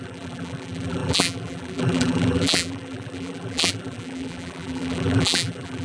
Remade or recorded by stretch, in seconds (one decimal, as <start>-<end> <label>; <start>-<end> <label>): 0.0-5.8 remade